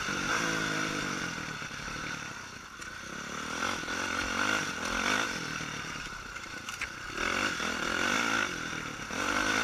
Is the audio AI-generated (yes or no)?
yes